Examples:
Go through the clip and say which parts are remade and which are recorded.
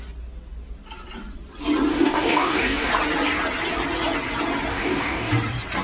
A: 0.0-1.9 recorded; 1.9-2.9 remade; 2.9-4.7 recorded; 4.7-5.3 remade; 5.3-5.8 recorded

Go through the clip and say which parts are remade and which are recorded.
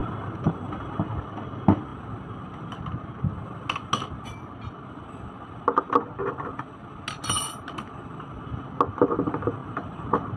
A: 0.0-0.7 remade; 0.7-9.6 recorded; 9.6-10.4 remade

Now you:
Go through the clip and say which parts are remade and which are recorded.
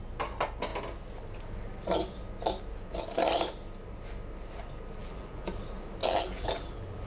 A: 0.0-5.0 recorded; 5.0-5.5 remade; 5.5-6.0 recorded; 6.0-7.1 remade